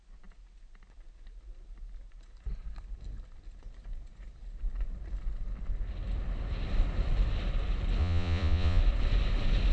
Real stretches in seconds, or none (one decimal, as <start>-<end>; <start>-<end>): 0.0-8.0; 8.8-9.7